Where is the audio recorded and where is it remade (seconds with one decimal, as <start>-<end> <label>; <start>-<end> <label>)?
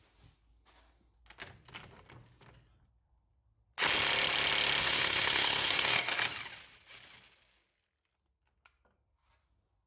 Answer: 0.0-4.8 recorded; 4.8-6.2 remade; 6.2-9.9 recorded